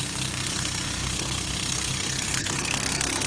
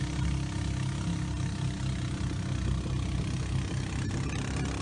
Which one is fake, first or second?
first